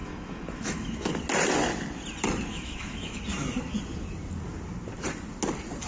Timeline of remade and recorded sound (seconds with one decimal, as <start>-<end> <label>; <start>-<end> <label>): 0.0-1.1 remade; 1.1-2.5 recorded; 2.5-3.2 remade; 3.2-5.9 recorded